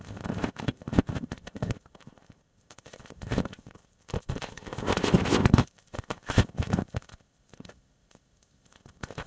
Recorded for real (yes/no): no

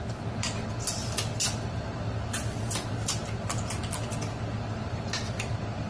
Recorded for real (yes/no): yes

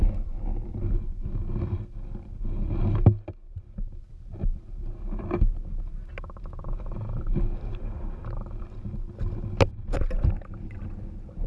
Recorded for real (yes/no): yes